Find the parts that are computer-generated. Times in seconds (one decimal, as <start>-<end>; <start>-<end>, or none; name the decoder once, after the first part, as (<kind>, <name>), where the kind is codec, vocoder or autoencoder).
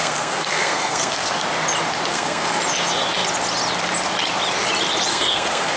0.0-1.3 (codec, SNAC); 2.1-2.6; 5.1-5.8